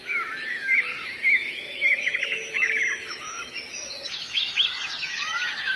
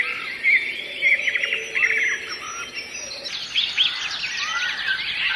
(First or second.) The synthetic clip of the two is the first